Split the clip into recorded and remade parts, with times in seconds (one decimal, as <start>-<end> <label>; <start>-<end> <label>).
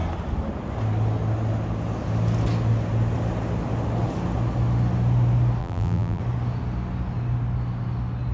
0.0-5.6 recorded; 5.6-6.2 remade; 6.2-8.3 recorded